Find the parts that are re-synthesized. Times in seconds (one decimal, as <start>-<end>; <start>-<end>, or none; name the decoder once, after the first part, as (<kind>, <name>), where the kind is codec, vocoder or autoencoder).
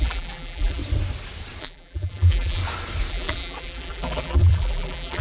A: 0.0-0.8 (vocoder, BigVGAN v2); 1.6-2.6; 3.1-5.2